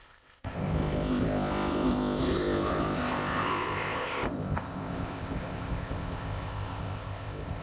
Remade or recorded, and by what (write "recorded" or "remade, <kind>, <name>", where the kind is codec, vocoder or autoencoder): remade, codec, ZipCodec